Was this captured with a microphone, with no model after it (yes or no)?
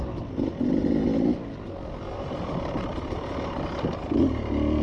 yes